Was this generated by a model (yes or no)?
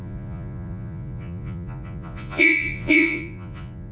yes